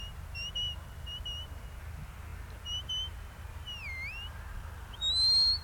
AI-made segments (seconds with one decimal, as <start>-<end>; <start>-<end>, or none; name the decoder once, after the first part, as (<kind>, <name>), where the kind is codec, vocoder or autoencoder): none